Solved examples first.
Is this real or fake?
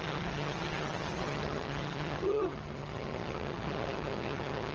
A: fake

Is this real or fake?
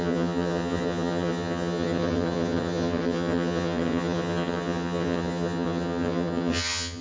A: fake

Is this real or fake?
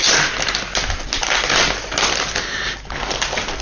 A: real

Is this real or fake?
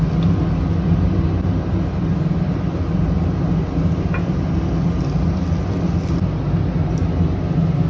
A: real